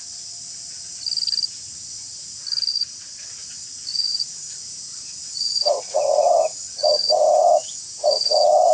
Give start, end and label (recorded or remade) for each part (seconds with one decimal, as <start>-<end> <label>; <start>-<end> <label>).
0.0-2.7 recorded; 2.7-3.2 remade; 3.2-3.9 recorded; 3.9-8.7 remade